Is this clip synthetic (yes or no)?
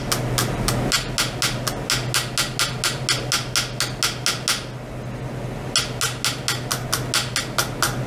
no